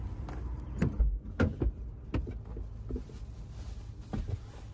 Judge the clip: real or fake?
real